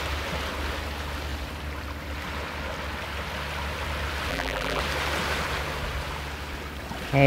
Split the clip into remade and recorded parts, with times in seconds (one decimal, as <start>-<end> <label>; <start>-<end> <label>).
0.0-4.3 recorded; 4.3-4.8 remade; 4.8-7.3 recorded